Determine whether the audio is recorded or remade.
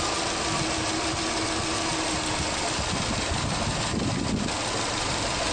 recorded